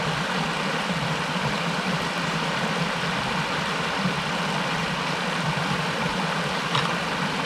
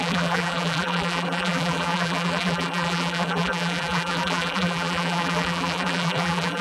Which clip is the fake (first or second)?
second